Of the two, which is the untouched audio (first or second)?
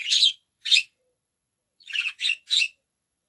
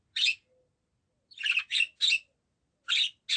second